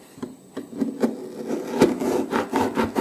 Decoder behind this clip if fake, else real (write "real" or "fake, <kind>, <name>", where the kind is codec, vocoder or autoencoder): real